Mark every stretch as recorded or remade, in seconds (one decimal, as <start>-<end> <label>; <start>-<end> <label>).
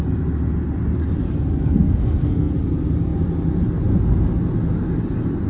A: 0.0-1.6 recorded; 1.6-2.5 remade; 2.5-5.5 recorded